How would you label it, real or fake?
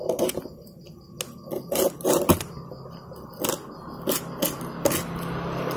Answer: real